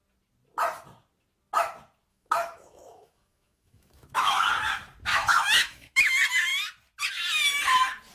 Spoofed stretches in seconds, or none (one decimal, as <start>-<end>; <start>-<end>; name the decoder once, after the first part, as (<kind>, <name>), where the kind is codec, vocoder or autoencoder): 2.1-4.5 (autoencoder, DAC-VAE); 5.1-6.1